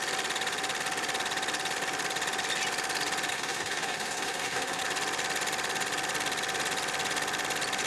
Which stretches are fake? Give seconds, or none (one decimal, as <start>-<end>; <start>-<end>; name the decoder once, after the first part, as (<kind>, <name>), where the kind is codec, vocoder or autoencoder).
3.3-4.8 (codec, SNAC)